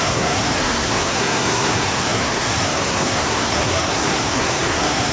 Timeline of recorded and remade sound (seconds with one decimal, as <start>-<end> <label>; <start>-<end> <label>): 0.0-5.1 remade